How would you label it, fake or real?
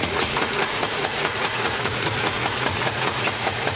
fake